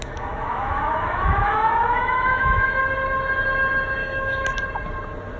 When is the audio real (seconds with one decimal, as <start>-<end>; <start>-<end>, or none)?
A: 2.8-4.0; 4.5-5.4